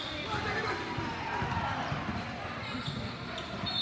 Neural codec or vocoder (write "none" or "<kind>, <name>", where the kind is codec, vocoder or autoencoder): none